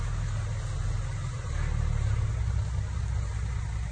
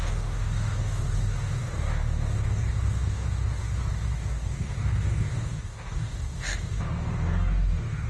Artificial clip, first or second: second